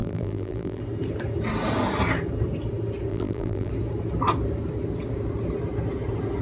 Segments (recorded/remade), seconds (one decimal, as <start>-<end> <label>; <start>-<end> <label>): 0.0-0.8 remade; 0.8-3.1 recorded; 3.1-3.7 remade; 3.7-6.4 recorded